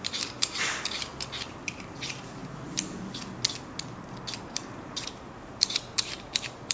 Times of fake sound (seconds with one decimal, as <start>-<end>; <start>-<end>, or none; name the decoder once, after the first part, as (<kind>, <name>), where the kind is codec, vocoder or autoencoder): 0.0-1.1 (vocoder, BigVGAN v2); 1.6-2.4; 4.4-6.7